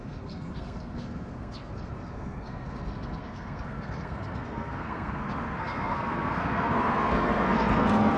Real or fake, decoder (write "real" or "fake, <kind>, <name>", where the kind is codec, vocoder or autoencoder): fake, codec, SNAC